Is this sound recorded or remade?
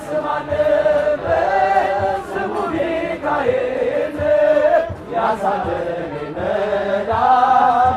recorded